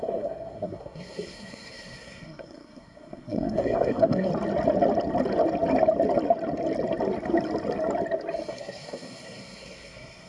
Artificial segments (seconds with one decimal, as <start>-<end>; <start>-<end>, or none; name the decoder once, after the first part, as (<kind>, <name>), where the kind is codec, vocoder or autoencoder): 0.0-4.3 (codec, SNAC); 8.5-10.3